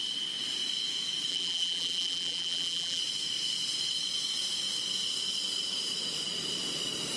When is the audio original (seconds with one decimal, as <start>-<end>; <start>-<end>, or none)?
0.0-1.3; 3.0-7.2